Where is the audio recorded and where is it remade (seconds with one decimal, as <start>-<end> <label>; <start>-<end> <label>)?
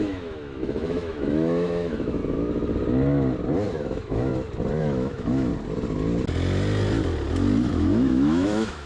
0.0-2.2 remade; 2.2-3.7 recorded; 3.7-4.3 remade; 4.3-4.8 recorded; 4.8-5.5 remade; 5.5-7.7 recorded; 7.7-8.9 remade